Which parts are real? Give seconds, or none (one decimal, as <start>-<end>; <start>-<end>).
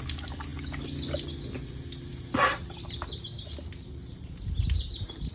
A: 0.0-5.3